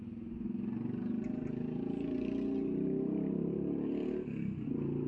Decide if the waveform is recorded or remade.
recorded